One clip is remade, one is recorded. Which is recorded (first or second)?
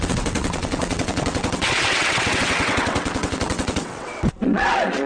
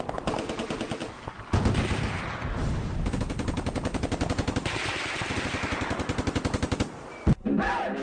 second